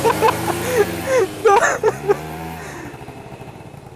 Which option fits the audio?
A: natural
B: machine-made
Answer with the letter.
B